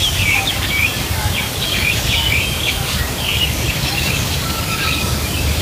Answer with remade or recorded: remade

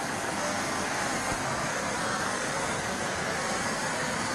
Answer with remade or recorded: remade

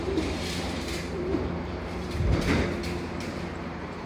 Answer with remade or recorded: remade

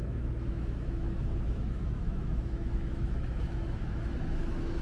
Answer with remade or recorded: remade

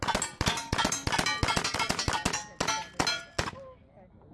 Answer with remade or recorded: recorded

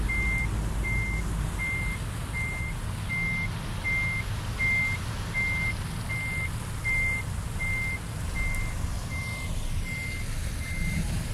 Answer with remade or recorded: recorded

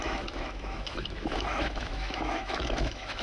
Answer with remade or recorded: remade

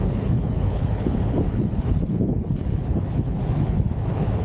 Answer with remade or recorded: remade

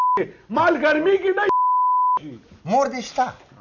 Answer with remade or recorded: recorded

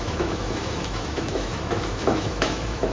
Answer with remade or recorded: remade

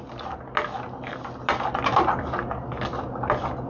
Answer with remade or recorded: recorded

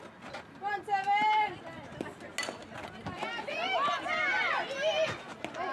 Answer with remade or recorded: recorded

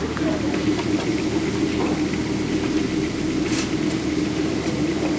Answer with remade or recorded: recorded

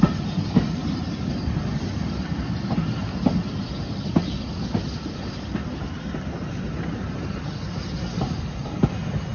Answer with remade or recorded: recorded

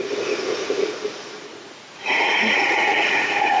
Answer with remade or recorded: remade